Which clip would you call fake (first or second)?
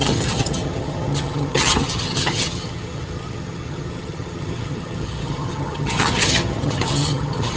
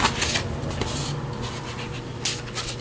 first